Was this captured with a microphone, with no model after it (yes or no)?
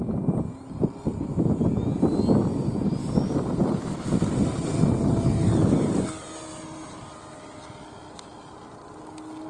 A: yes